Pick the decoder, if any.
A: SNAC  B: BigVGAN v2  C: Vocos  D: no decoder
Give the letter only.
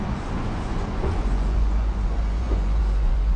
C